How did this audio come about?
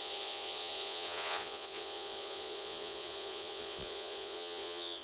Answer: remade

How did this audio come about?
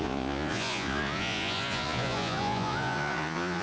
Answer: remade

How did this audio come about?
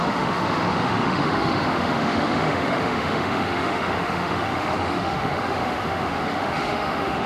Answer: remade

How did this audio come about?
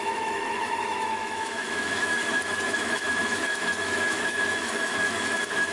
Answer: remade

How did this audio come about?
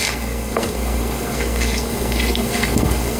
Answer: remade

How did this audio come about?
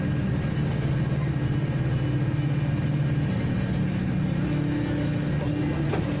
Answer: recorded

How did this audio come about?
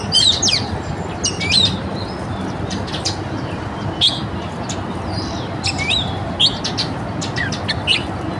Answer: recorded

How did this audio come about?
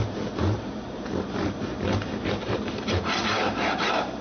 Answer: remade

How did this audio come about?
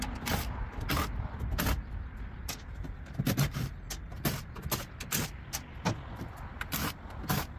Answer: recorded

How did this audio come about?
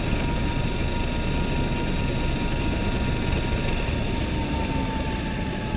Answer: recorded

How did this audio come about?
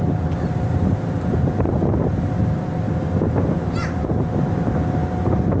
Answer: recorded